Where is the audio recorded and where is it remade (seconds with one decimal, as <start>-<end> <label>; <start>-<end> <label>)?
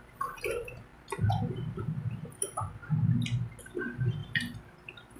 0.0-0.9 remade; 0.9-1.5 recorded; 1.5-2.8 remade; 2.8-3.6 recorded; 3.6-5.2 remade